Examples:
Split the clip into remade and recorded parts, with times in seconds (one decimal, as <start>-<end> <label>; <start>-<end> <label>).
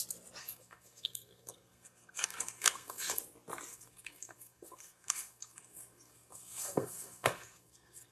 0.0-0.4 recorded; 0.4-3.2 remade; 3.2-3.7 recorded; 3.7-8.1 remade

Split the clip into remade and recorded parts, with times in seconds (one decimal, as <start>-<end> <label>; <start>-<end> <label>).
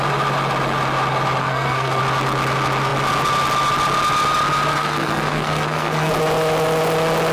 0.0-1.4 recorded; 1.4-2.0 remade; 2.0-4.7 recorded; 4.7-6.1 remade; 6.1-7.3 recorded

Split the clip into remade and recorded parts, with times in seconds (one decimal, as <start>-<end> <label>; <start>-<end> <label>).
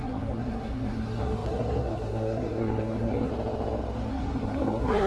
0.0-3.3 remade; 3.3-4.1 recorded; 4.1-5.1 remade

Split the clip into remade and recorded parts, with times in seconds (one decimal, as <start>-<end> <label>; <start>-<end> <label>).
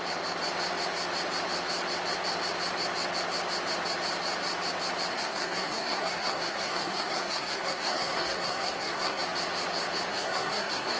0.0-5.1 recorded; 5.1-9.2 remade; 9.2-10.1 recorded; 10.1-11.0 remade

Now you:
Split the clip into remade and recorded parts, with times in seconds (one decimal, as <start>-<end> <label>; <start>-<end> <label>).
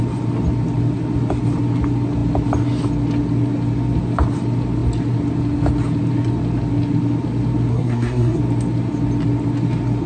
0.0-7.7 recorded; 7.7-8.4 remade; 8.4-10.1 recorded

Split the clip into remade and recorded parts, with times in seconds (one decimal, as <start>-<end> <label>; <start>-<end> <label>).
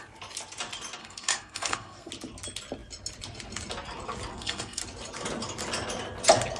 0.0-1.0 recorded; 1.0-2.1 remade; 2.1-4.3 recorded; 4.3-4.8 remade; 4.8-6.6 recorded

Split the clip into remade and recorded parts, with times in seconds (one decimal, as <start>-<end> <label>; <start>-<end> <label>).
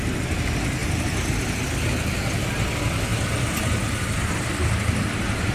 0.0-5.5 recorded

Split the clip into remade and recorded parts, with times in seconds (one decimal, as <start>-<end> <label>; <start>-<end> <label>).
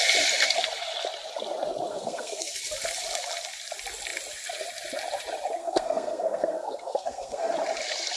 0.0-1.9 recorded; 1.9-2.6 remade; 2.6-5.6 recorded; 5.6-7.5 remade; 7.5-8.2 recorded